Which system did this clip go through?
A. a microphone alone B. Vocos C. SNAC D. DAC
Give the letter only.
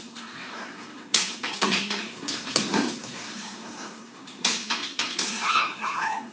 C